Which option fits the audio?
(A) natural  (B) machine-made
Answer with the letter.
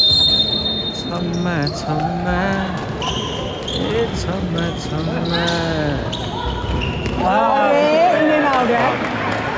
A